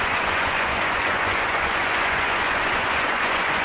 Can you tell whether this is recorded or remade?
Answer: remade